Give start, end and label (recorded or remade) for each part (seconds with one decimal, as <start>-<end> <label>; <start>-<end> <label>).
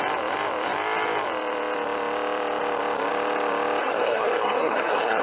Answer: 0.0-3.8 recorded; 3.8-5.2 remade